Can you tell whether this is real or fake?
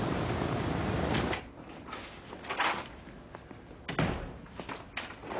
real